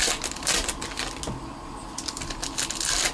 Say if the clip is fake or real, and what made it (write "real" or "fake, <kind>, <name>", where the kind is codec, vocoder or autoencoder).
real